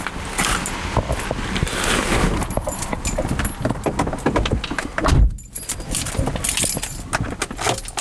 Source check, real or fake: real